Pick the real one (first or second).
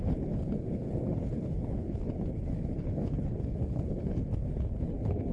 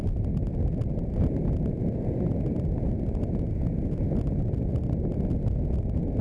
second